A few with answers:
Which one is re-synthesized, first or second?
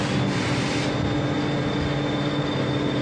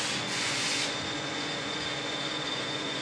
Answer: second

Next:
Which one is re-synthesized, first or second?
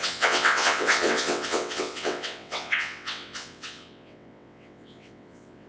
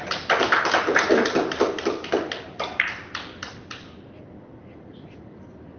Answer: first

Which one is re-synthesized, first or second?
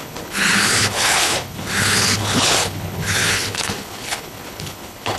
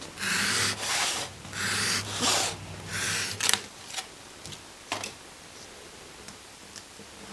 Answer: first